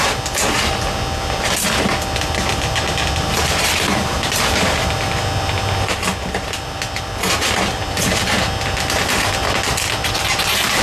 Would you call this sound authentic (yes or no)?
yes